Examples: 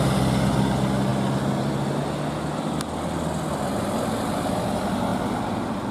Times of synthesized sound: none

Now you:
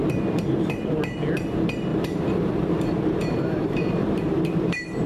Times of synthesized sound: 0.0-1.0 (vocoder, BigVGAN v2); 1.9-5.1

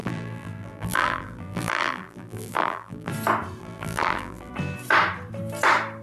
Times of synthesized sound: 0.0-3.1 (vocoder, BigVGAN v2); 3.6-4.5

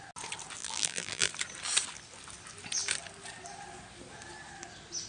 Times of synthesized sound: 0.6-1.3 (vocoder, BigVGAN v2)

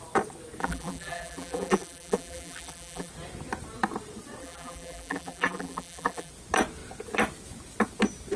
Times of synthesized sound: 0.6-3.1 (vocoder, BigVGAN v2); 4.4-6.3

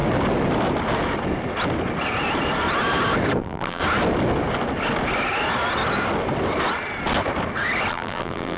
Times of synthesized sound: 3.4-3.8 (vocoder, BigVGAN v2); 7.9-8.6